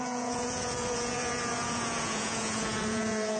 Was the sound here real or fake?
fake